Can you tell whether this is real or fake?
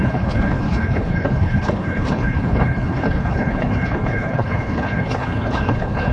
fake